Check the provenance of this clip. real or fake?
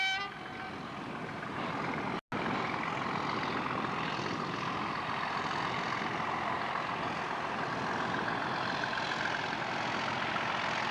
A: real